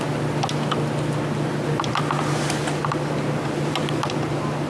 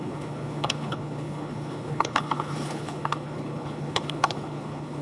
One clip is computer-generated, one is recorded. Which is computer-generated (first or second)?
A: second